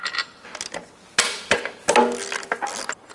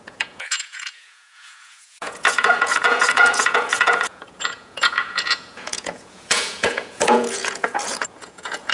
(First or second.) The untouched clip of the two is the first